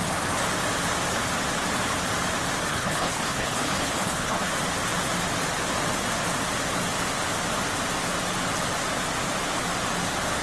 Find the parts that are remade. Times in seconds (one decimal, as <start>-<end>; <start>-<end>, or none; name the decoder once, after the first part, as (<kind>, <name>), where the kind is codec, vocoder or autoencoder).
2.7-4.5 (codec, HILCodec)